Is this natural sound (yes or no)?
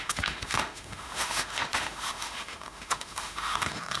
no